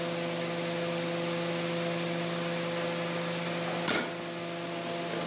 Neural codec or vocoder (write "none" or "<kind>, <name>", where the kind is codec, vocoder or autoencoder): none